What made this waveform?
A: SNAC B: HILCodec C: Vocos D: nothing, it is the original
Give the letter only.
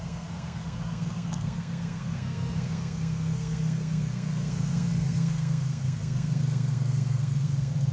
A